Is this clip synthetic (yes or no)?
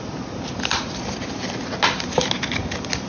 no